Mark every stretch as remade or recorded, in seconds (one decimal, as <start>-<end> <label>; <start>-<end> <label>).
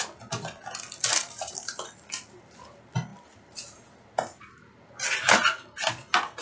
0.0-1.2 recorded; 1.2-2.0 remade; 2.0-6.4 recorded